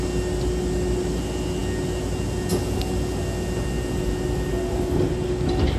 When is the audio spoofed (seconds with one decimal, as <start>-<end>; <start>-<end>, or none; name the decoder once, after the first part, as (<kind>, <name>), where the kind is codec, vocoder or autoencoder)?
none